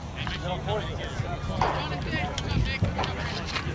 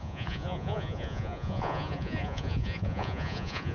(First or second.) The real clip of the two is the first